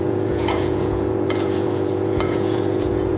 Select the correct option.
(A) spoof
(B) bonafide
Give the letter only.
A